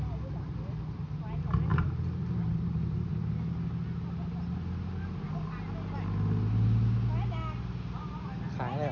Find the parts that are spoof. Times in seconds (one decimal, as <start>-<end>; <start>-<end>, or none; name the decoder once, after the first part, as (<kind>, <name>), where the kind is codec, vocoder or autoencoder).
1.7-3.1 (vocoder, BigVGAN v2)